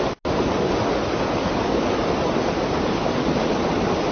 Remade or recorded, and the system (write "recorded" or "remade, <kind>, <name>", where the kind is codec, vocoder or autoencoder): recorded